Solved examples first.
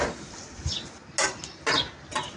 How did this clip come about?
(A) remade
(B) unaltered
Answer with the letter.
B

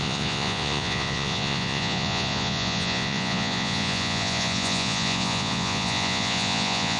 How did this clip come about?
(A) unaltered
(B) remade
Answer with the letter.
B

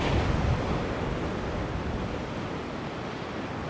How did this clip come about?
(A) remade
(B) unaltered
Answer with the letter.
B